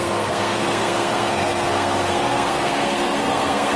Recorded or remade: remade